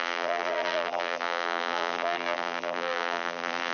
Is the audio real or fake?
fake